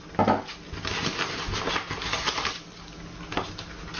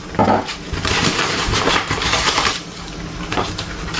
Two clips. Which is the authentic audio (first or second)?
first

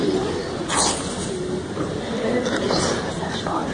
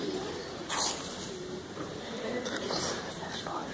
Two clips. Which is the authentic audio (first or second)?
first